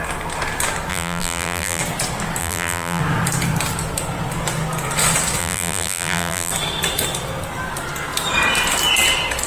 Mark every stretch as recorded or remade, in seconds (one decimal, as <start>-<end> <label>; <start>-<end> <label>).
0.0-0.9 recorded; 0.9-1.8 remade; 1.8-2.4 recorded; 2.4-3.0 remade; 3.0-5.4 recorded; 5.4-6.5 remade; 6.5-9.5 recorded